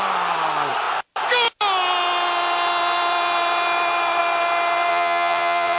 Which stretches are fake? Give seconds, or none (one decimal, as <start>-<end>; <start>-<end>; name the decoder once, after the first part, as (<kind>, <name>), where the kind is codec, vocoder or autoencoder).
4.9-5.8 (vocoder, Vocos)